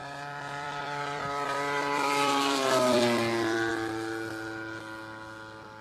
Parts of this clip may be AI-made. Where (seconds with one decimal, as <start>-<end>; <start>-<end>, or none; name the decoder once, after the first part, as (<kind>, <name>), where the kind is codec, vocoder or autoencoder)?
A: 0.0-3.7 (vocoder, BigVGAN v2)